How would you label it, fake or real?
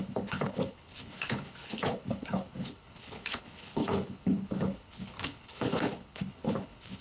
fake